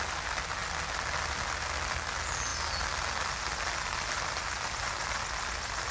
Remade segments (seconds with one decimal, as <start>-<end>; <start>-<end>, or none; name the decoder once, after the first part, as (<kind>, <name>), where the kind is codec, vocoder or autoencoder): none